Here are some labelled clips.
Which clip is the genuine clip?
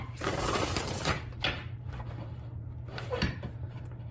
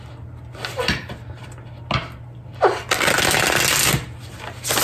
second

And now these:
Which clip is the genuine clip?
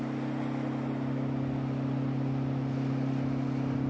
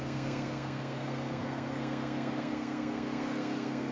first